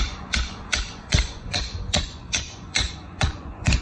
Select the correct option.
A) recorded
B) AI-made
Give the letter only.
B